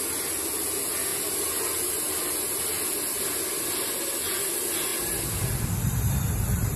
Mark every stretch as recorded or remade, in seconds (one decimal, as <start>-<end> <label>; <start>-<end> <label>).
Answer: 0.0-6.8 recorded